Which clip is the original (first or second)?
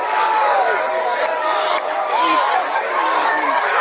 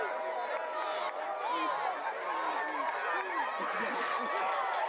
second